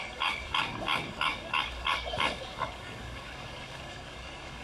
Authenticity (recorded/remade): remade